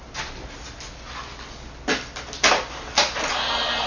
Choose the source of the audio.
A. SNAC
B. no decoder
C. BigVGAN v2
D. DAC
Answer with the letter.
B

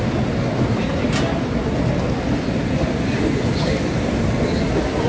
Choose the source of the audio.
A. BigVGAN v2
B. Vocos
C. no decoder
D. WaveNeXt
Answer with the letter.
C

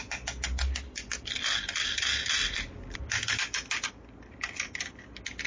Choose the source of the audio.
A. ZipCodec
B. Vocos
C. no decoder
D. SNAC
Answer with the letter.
C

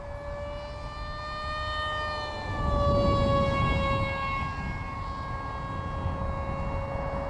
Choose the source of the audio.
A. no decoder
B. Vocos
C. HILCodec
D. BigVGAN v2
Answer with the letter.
A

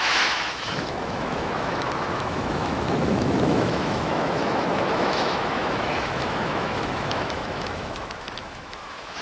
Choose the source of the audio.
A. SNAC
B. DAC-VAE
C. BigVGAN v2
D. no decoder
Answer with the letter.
B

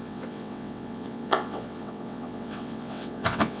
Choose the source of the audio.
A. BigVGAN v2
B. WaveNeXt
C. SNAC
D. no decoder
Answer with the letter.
B